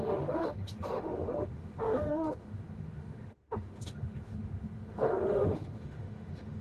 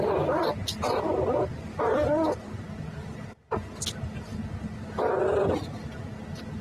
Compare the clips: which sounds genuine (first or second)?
second